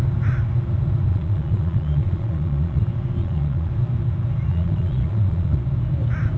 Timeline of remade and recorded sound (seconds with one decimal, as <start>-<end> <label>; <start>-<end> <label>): 0.0-1.1 recorded; 1.1-2.8 remade; 2.8-3.2 recorded; 3.2-3.7 remade; 3.7-4.5 recorded; 4.5-5.6 remade; 5.6-6.4 recorded